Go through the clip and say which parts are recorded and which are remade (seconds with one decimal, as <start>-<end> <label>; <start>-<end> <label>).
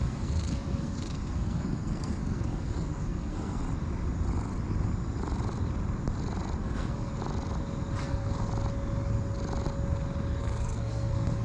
0.0-3.6 remade; 3.6-6.6 recorded; 6.6-7.1 remade; 7.1-8.0 recorded; 8.0-8.5 remade; 8.5-10.4 recorded; 10.4-11.4 remade